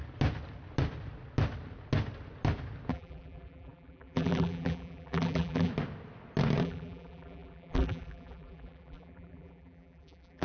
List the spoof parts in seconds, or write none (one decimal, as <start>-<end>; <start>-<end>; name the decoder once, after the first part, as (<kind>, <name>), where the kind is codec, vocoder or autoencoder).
2.9-5.7 (vocoder, BigVGAN v2); 6.6-10.4